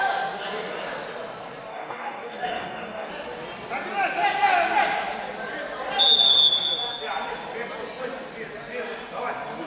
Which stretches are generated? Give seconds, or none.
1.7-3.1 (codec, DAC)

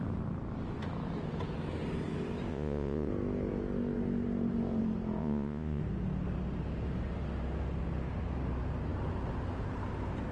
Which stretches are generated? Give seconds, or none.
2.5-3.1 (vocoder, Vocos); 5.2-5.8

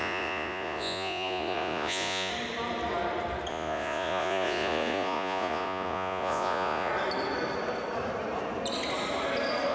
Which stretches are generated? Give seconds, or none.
0.0-2.3 (vocoder, Vocos); 3.5-6.9

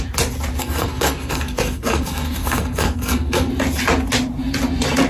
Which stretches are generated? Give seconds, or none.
0.6-3.5 (codec, SNAC)

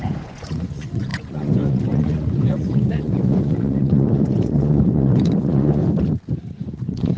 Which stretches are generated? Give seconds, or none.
0.0-5.8 (vocoder, Vocos); 6.5-7.2

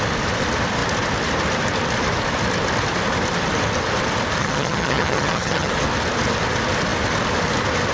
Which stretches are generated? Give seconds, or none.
4.4-5.7 (vocoder, HiFi-GAN)